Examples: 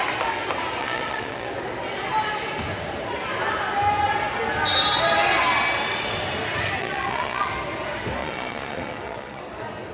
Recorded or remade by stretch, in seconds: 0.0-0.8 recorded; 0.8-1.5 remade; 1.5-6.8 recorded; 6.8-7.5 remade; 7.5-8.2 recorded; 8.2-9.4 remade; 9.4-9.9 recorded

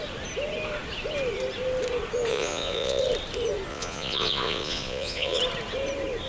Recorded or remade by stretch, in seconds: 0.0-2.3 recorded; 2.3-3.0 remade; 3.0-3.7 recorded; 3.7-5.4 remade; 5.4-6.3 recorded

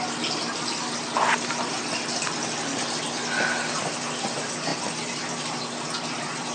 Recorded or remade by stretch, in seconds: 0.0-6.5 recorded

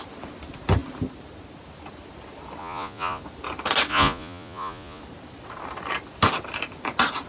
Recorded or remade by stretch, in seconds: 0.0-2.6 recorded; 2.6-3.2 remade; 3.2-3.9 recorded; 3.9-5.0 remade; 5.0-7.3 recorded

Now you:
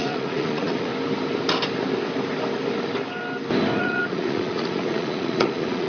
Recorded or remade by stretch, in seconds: 0.0-0.9 remade; 0.9-3.8 recorded; 3.8-5.9 remade

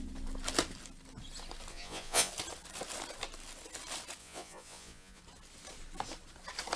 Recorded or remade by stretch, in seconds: 0.0-1.7 recorded; 1.7-2.3 remade; 2.3-4.2 recorded; 4.2-5.2 remade; 5.2-6.8 recorded

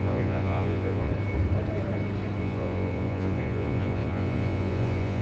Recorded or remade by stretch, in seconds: 0.0-1.1 remade; 1.1-2.4 recorded; 2.4-5.2 remade

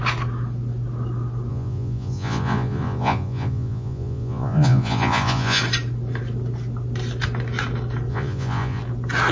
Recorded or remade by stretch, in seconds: 0.0-1.5 recorded; 1.5-5.6 remade; 5.6-8.1 recorded; 8.1-8.8 remade; 8.8-9.3 recorded